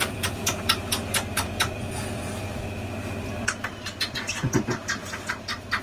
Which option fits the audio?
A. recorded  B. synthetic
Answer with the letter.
A